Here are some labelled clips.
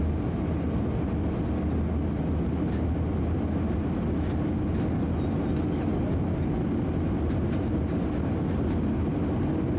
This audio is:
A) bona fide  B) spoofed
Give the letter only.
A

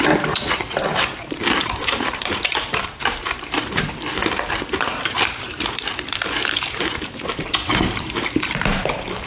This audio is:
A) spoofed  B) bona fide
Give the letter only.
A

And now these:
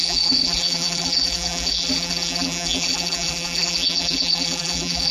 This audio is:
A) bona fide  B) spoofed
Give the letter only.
B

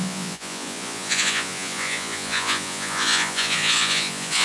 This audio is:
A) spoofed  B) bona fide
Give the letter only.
A